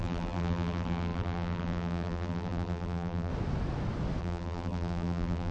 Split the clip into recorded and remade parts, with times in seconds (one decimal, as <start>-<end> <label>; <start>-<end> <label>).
0.0-3.3 remade; 3.3-4.2 recorded; 4.2-5.5 remade